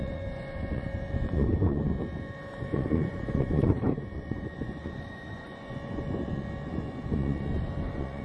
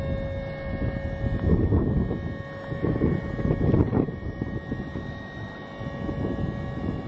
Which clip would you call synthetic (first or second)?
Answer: first